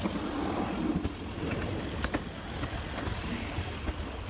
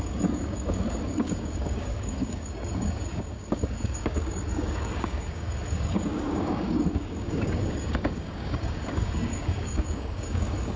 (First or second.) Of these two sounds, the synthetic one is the second